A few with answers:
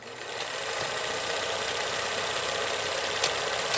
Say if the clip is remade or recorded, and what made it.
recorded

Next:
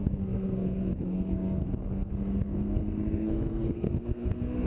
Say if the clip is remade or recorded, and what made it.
remade, codec, SNAC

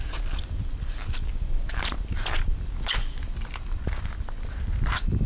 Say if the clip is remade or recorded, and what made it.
recorded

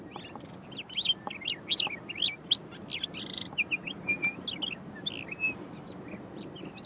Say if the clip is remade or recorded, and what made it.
recorded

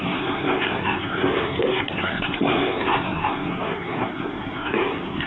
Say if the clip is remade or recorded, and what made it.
remade, codec, SNAC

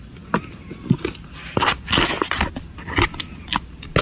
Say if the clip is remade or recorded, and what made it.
recorded